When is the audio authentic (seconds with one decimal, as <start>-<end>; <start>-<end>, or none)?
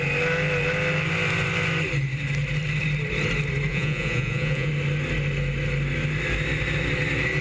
0.0-3.7; 4.7-7.4